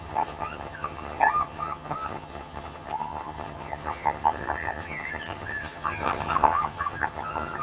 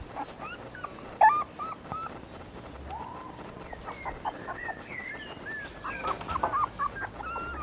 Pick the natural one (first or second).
second